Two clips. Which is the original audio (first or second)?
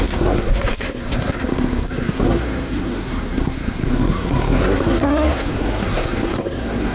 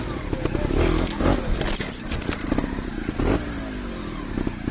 second